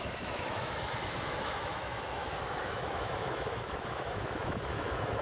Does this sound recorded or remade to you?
remade